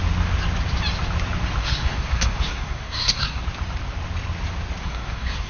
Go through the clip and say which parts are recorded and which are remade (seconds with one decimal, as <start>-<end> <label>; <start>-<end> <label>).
0.0-1.6 recorded; 1.6-3.4 remade; 3.4-4.8 recorded; 4.8-5.5 remade